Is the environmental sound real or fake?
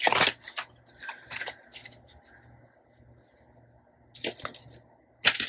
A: real